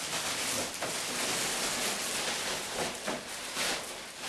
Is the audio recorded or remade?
recorded